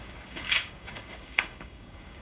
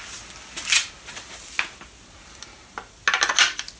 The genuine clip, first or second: second